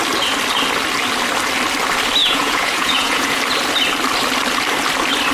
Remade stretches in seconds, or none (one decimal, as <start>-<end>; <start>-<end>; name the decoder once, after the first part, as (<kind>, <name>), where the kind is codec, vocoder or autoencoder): 2.2-3.4 (vocoder, Vocos)